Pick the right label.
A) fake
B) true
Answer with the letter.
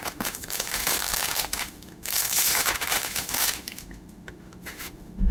A